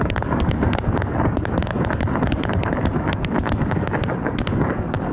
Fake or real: fake